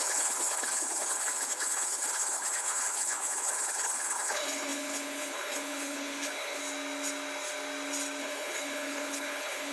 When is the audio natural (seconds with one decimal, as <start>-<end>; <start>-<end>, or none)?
6.6-8.2